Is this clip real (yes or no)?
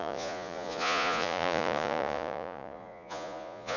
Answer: no